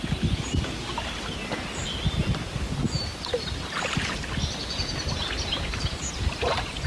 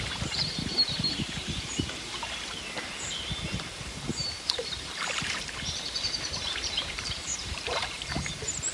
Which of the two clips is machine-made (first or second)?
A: second